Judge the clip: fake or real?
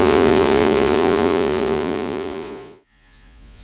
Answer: fake